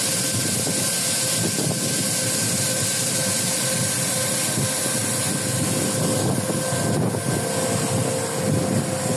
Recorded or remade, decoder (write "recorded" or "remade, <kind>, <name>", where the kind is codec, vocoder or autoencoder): recorded